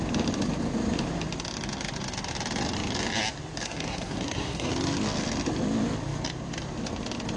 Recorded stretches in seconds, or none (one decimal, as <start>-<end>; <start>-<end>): 0.0-3.6; 4.7-7.4